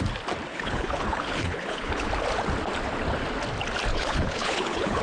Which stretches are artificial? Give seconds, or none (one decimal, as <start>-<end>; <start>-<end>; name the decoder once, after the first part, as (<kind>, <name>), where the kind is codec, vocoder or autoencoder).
0.5-2.1 (codec, HILCodec); 3.9-5.0